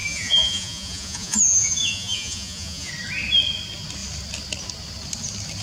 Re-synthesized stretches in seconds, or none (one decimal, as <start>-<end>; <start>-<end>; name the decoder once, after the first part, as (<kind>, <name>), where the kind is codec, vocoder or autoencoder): 0.0-2.9 (vocoder, Vocos)